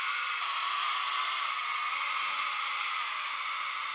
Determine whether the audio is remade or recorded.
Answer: recorded